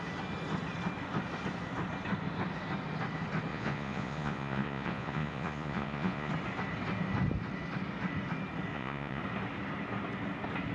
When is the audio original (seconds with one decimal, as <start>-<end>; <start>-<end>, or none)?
0.0-3.5; 6.3-8.7; 9.2-10.7